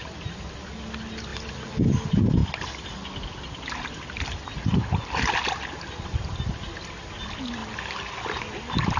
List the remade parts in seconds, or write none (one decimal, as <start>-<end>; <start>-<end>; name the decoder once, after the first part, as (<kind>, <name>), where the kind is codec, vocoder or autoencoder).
none